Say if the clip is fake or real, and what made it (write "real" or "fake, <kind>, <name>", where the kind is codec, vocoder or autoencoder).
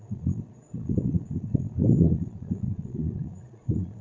fake, vocoder, Vocos